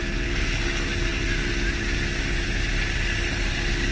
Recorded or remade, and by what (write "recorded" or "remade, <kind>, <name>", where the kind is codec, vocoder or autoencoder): recorded